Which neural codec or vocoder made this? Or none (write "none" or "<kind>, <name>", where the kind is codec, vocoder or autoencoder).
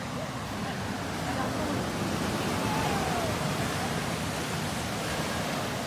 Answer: none